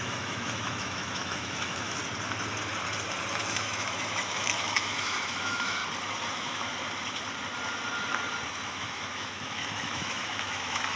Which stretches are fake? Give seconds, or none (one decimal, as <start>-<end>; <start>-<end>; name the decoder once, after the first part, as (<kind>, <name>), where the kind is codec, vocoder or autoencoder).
0.0-2.0 (autoencoder, DAC-VAE); 3.3-5.8; 6.3-6.7; 8.5-11.0